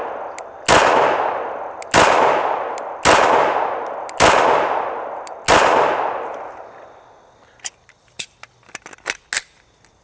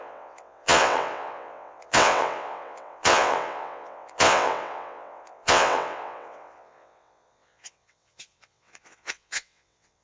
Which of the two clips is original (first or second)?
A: first